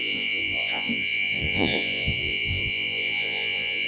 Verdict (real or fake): fake